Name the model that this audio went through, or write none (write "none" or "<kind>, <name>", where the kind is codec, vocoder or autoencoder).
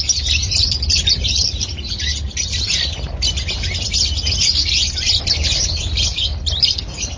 none